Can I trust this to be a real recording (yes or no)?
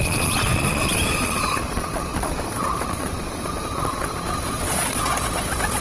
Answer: no